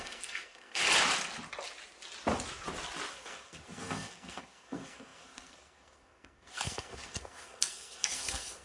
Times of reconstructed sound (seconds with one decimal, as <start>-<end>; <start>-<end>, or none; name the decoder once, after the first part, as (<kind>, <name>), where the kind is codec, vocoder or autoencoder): 0.0-0.8 (codec, SNAC); 3.1-8.6